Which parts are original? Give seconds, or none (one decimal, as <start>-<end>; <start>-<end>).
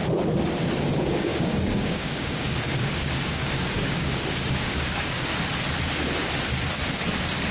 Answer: 0.0-0.8; 5.3-7.5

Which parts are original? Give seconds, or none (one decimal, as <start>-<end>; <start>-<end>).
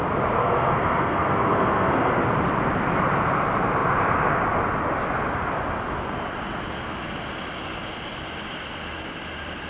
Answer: 0.0-0.4; 2.1-9.7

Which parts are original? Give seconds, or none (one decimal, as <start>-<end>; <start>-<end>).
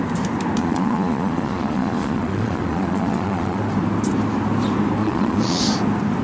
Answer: 0.0-0.6; 3.6-5.0; 5.6-6.2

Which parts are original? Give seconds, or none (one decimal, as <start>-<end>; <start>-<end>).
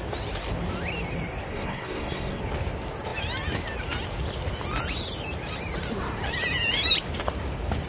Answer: 0.0-1.5; 2.4-7.9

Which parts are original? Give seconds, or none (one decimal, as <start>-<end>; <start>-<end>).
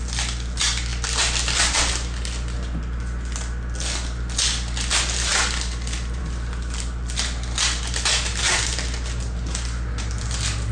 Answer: 0.0-10.7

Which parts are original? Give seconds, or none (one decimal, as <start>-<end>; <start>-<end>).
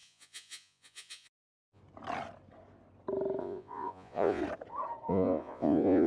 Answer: 1.8-3.4; 4.4-5.1